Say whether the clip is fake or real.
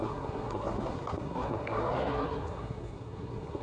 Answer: fake